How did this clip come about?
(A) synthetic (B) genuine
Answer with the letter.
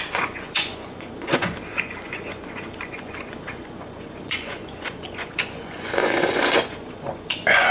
A